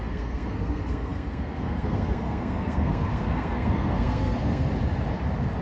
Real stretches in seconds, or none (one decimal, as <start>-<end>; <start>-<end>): 4.7-5.6